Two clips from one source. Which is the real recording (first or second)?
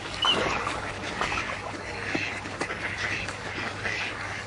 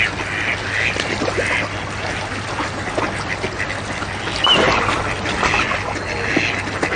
second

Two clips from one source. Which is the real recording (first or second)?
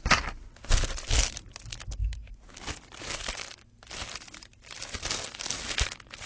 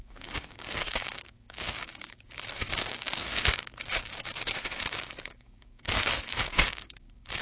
first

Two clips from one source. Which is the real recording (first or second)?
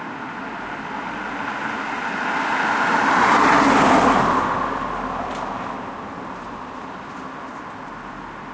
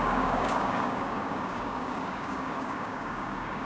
first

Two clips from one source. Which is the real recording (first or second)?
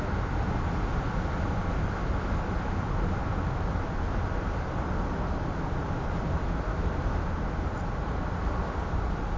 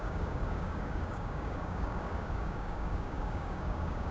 first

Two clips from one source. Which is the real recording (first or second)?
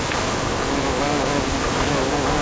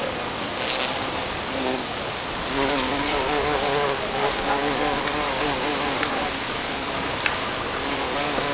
first